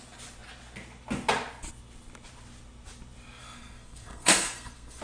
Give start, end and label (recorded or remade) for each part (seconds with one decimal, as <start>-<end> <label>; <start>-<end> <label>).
0.0-3.4 recorded; 3.4-5.0 remade